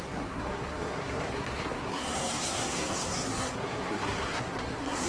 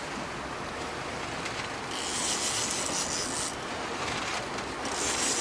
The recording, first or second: second